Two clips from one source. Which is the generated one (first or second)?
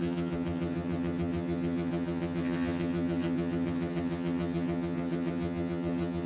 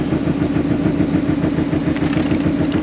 first